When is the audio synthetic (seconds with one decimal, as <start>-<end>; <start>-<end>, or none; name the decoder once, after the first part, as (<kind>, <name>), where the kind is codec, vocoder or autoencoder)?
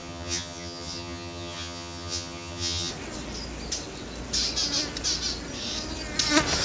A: 0.0-2.9 (vocoder, HiFi-GAN)